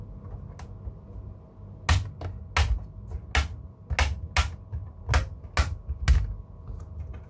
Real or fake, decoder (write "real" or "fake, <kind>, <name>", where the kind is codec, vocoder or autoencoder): real